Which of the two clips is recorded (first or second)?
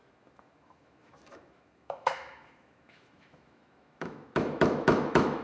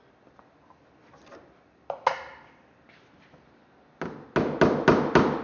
second